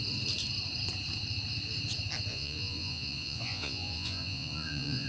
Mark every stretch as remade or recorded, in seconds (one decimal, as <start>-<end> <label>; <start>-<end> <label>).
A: 0.0-2.3 recorded; 2.3-5.1 remade